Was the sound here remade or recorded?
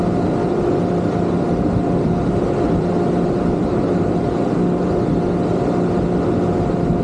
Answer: recorded